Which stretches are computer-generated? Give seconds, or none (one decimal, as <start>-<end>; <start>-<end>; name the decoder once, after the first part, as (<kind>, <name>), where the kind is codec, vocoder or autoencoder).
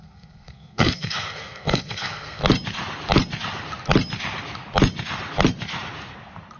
0.0-2.4 (codec, SNAC)